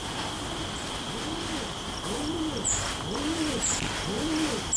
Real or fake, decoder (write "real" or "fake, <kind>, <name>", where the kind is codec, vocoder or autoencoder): real